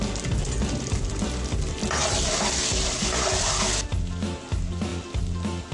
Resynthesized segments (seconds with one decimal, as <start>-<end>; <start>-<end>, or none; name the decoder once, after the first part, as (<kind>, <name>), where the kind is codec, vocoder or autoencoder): none